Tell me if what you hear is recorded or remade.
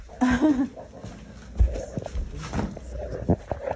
recorded